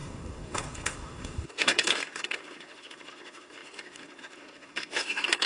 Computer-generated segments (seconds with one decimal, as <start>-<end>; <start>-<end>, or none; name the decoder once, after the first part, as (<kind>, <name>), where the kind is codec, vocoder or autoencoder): 0.0-5.5 (codec, SNAC)

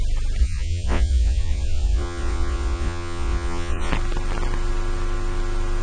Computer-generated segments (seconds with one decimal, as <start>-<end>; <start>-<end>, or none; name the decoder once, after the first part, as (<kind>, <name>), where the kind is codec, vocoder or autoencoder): 0.4-3.9 (vocoder, Vocos)

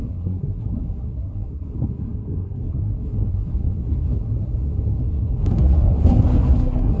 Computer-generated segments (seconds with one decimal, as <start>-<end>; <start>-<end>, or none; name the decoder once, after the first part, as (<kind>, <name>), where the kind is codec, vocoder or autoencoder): 0.0-7.0 (codec, SNAC)

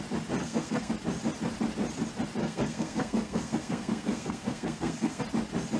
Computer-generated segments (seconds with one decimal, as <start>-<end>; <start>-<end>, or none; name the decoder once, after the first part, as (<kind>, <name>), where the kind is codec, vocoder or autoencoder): 0.4-0.9 (codec, SNAC); 2.4-5.2

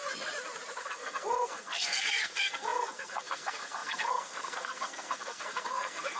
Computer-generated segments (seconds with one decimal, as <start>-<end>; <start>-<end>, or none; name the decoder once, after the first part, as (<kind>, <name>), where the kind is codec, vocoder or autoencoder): 0.8-6.2 (codec, SNAC)

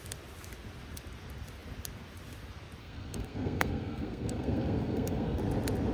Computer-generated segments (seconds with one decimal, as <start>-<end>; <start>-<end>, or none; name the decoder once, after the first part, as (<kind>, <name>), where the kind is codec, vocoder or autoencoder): 2.8-5.4 (codec, SNAC)

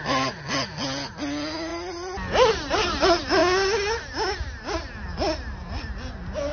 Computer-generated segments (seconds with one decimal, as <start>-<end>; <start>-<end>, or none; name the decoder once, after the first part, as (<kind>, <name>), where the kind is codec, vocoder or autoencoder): none